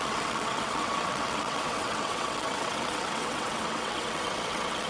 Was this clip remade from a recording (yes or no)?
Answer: yes